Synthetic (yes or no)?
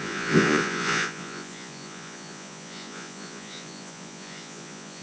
yes